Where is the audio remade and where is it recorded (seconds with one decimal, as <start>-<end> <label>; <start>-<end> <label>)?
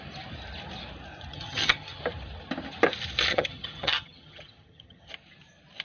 0.0-1.3 recorded; 1.3-2.0 remade; 2.0-3.3 recorded; 3.3-5.1 remade; 5.1-5.8 recorded